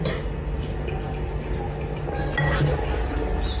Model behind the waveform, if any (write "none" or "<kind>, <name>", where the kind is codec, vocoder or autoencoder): none